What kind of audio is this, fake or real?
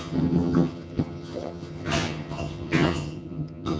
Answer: fake